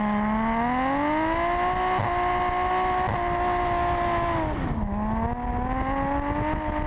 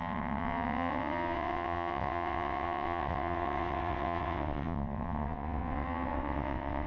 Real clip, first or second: first